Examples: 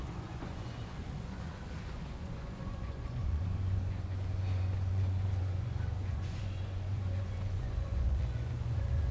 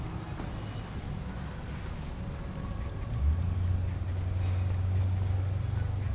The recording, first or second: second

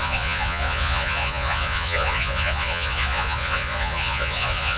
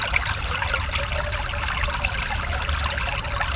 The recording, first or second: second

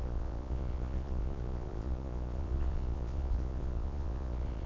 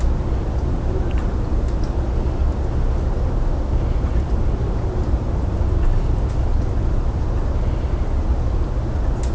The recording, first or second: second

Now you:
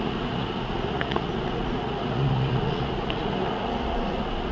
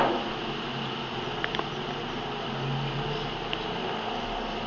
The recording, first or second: second